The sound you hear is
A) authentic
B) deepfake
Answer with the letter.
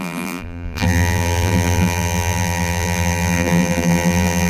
B